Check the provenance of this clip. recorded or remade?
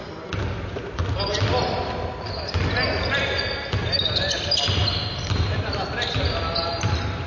recorded